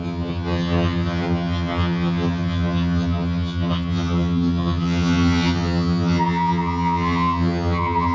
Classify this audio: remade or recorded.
remade